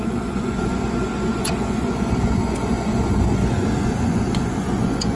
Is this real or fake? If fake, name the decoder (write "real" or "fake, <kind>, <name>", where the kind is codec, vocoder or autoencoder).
fake, vocoder, Vocos